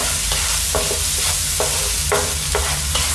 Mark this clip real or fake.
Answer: real